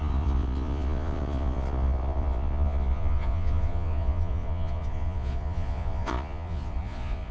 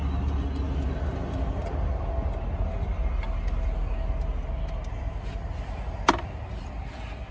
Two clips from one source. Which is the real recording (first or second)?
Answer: second